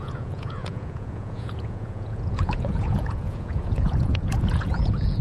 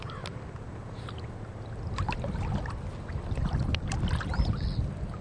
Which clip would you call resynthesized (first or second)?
first